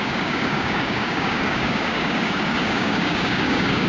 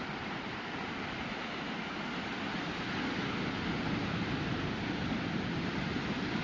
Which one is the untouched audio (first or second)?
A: second